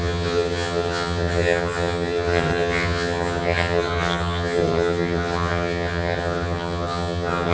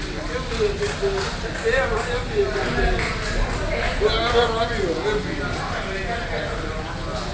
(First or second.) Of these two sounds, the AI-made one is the first